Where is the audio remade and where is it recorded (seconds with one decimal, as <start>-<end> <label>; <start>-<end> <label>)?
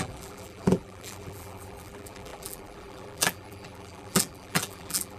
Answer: 0.0-5.2 remade